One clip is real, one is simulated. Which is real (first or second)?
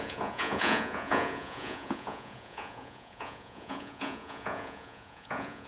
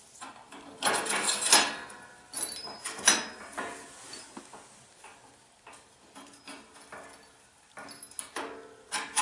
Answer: second